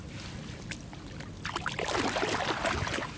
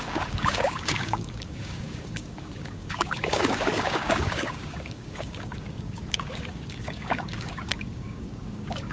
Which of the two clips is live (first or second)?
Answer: first